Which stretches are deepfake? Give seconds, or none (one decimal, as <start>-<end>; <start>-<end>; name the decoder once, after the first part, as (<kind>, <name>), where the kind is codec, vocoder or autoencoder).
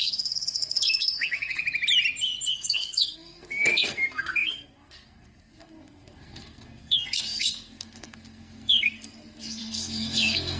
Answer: 0.0-1.6 (codec, SNAC); 2.5-10.6